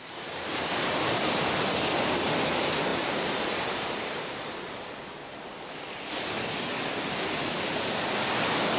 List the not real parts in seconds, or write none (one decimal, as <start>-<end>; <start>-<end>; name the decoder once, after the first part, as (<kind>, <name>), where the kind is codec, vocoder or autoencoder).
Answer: 2.9-4.9 (vocoder, BigVGAN v2)